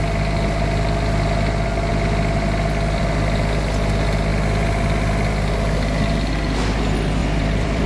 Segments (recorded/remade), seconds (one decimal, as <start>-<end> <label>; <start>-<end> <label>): 0.0-7.2 recorded; 7.2-7.9 remade

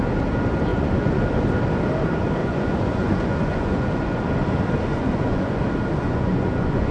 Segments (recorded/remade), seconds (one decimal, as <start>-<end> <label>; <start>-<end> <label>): 0.0-0.7 recorded; 0.7-1.2 remade; 1.2-2.4 recorded; 2.4-4.3 remade; 4.3-4.9 recorded; 4.9-5.6 remade; 5.6-6.0 recorded; 6.0-6.9 remade

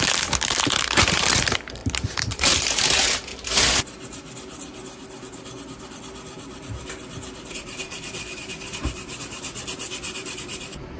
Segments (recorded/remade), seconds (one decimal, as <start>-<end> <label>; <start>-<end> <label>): 0.0-3.3 remade; 3.3-7.5 recorded; 7.5-11.0 remade

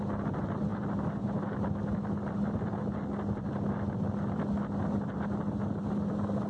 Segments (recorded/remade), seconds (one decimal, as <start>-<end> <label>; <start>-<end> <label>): 0.0-6.5 recorded

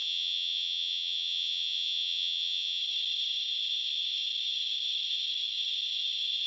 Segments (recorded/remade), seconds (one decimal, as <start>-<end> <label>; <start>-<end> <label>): 0.0-2.8 remade; 2.8-6.5 recorded